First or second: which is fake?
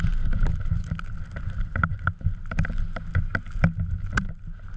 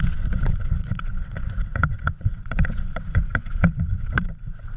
second